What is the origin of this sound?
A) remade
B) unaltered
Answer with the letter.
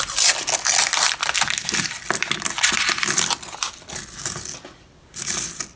B